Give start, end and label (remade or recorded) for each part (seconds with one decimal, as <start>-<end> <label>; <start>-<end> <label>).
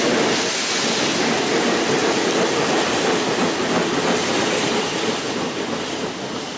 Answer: 0.0-6.6 recorded